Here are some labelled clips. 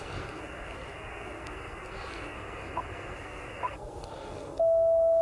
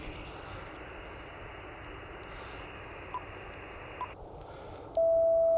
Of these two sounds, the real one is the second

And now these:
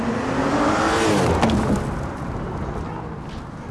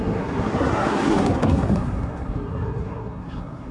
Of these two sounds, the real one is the first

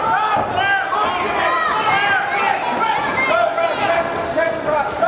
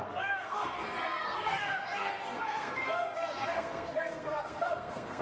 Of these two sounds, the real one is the first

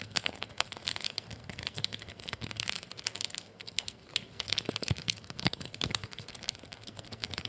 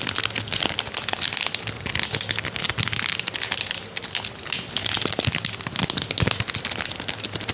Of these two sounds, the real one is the second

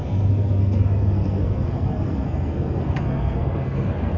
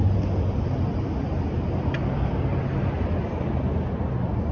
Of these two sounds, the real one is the second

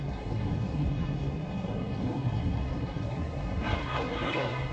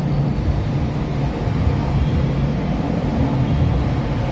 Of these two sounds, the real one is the second